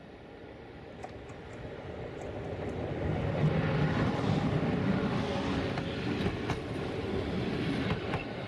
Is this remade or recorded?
recorded